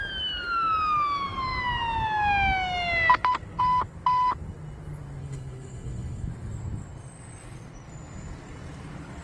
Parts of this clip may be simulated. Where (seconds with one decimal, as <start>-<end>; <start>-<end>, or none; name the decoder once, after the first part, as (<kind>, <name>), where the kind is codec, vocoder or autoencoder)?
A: 5.2-6.3 (codec, HILCodec)